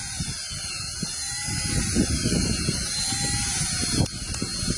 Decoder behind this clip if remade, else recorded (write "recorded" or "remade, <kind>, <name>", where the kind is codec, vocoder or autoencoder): recorded